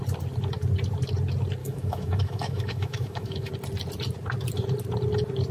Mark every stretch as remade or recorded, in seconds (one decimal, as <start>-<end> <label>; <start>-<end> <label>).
0.0-1.6 recorded; 1.6-3.5 remade; 3.5-5.5 recorded